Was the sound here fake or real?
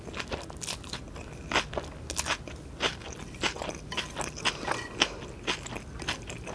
real